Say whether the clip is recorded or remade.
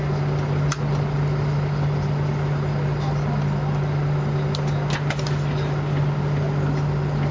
recorded